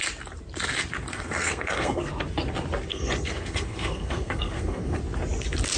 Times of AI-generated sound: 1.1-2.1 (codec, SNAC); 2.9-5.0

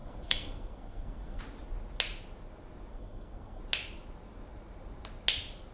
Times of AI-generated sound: 0.0-1.4 (codec, SNAC); 2.9-3.6

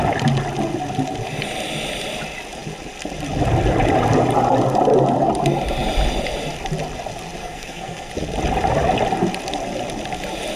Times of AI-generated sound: 7.4-8.1 (codec, SNAC)

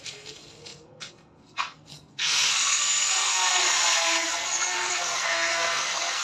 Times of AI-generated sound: 0.0-6.2 (codec, SNAC)